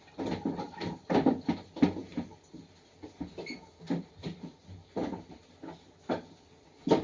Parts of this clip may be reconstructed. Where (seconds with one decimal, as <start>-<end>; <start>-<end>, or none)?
none